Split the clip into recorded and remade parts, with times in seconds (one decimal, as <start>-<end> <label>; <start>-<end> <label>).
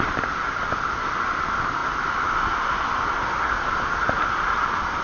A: 0.0-5.0 recorded